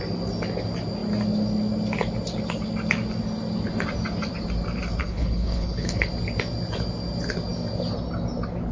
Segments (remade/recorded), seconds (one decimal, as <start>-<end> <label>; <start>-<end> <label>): 0.0-5.0 recorded; 5.0-6.1 remade; 6.1-8.7 recorded